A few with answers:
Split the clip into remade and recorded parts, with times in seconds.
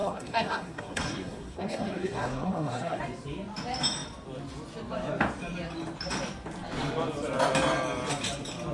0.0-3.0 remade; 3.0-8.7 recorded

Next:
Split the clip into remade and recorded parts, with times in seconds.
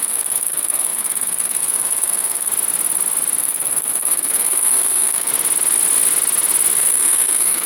0.0-2.5 remade; 2.5-3.4 recorded; 3.4-5.3 remade; 5.3-6.8 recorded; 6.8-7.7 remade